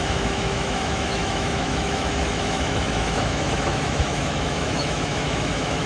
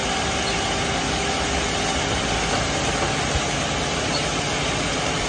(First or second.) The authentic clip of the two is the second